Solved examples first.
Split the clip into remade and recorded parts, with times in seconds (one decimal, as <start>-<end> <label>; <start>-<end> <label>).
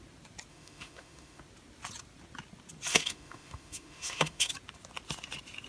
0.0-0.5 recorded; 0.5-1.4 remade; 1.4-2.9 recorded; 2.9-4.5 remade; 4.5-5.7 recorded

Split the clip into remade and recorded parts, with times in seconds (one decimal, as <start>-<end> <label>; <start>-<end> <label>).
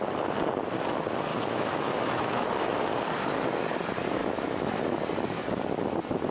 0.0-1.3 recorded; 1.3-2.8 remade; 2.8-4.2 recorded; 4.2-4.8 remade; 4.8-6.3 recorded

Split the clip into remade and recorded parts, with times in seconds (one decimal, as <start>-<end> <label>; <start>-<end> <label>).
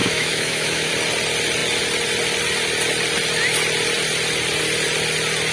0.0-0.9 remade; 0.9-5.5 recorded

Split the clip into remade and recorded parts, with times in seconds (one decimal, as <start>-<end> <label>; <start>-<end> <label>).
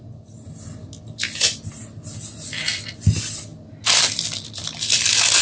0.0-5.4 recorded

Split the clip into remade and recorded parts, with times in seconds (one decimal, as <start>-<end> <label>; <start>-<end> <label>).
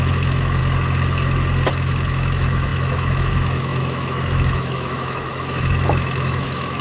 0.0-0.6 remade; 0.6-1.7 recorded; 1.7-6.8 remade